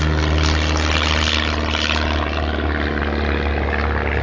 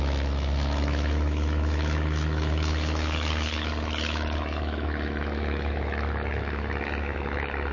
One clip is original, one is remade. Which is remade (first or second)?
second